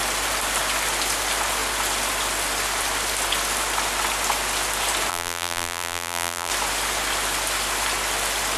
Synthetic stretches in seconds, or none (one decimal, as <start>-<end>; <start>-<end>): 5.1-6.5